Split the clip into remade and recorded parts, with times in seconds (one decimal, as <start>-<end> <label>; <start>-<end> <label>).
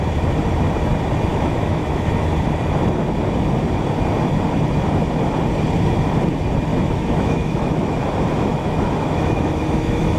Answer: 0.0-1.3 recorded; 1.3-2.3 remade; 2.3-6.7 recorded; 6.7-8.0 remade; 8.0-8.5 recorded; 8.5-10.2 remade